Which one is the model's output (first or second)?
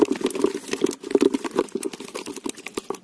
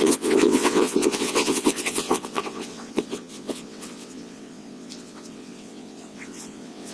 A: second